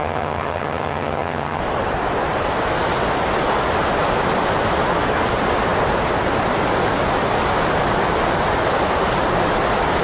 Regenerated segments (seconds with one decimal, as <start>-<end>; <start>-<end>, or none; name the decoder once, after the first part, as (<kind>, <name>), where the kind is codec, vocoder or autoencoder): 0.0-1.6 (vocoder, HiFi-GAN)